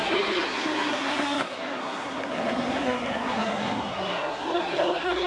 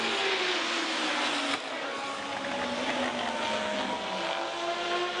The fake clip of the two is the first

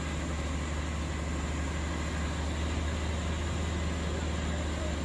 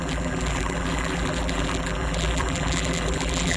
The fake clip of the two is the second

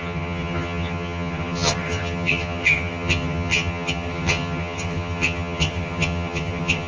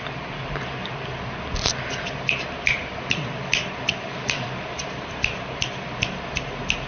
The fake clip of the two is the first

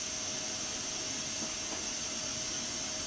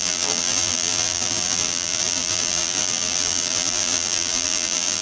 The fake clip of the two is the second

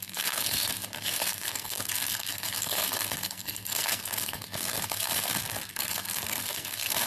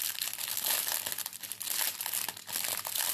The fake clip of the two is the first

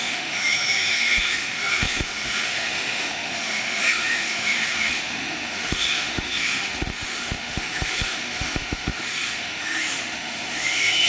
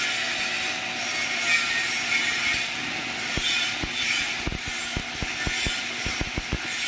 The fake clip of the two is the first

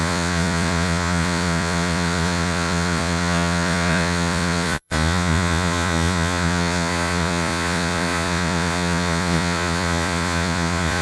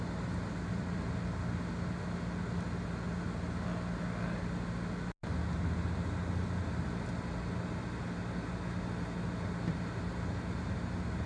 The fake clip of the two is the first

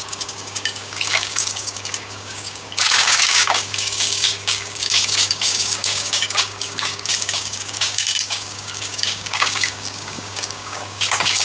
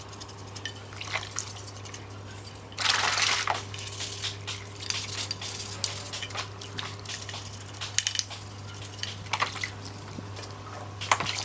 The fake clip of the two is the first